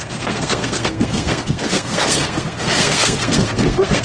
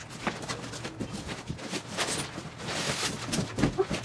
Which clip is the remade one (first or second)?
first